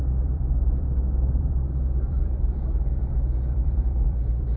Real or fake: fake